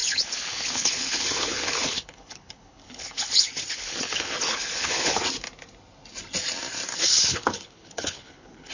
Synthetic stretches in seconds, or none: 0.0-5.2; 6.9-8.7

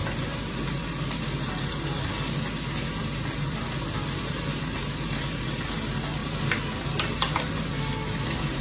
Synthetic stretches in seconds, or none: none

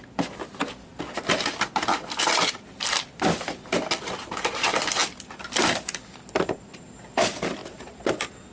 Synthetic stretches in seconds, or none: none

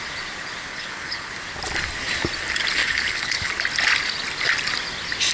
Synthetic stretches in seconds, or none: 0.7-1.3; 2.8-3.5